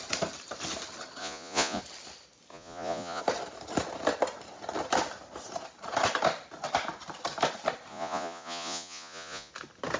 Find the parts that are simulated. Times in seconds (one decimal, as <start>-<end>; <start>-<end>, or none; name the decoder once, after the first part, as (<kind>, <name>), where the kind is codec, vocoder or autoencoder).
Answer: 1.2-1.8 (vocoder, Vocos); 2.5-3.2; 7.9-9.5

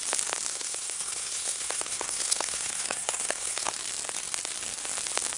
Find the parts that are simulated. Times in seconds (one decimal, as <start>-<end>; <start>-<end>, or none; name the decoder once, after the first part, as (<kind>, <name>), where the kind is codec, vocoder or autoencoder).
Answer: 0.5-3.7 (codec, SNAC)

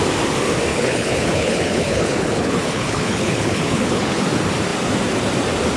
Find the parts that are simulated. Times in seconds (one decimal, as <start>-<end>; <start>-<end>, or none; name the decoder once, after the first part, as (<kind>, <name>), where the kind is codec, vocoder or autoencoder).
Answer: 0.7-4.2 (codec, HILCodec)

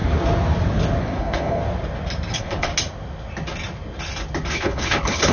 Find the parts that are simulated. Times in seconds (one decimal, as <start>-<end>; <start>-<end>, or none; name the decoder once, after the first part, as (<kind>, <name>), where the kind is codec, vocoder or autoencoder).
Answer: 1.0-1.6 (codec, HILCodec); 2.3-2.7; 4.5-5.3

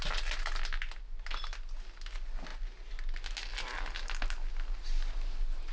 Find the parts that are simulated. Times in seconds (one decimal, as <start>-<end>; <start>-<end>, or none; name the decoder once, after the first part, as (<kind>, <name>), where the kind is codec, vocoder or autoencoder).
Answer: none

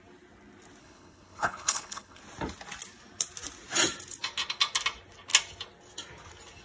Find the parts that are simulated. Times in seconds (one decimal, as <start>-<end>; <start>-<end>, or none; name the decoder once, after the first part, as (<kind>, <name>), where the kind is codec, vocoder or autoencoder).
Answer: 0.8-2.2 (codec, HILCodec)

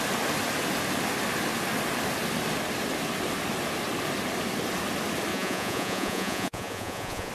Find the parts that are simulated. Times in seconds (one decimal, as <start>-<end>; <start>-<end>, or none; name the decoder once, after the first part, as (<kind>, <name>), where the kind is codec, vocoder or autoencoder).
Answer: 5.3-7.3 (vocoder, Vocos)

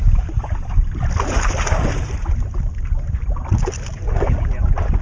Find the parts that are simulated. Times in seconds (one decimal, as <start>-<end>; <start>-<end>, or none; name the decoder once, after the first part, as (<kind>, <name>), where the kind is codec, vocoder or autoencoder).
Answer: none